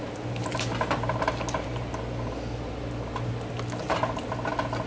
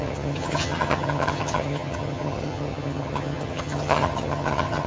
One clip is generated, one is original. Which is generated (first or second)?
second